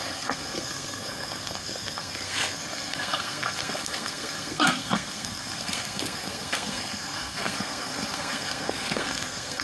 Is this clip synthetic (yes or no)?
yes